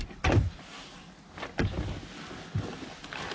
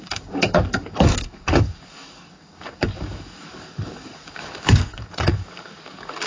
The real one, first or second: first